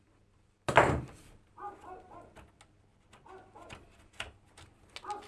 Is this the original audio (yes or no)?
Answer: yes